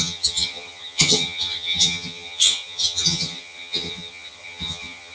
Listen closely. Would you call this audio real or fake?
fake